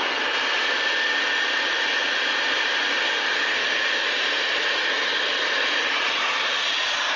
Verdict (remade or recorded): recorded